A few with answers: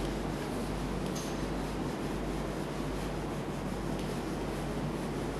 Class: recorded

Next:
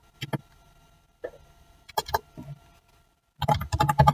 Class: recorded